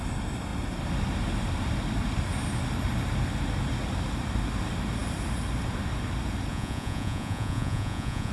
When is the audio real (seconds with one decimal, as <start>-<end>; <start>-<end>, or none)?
0.0-6.5